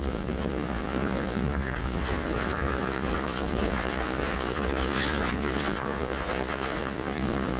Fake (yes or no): yes